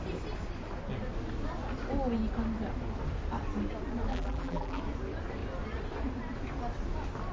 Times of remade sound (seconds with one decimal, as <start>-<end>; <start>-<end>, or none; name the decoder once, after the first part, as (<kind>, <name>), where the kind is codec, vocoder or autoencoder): 4.1-4.8 (vocoder, BigVGAN v2)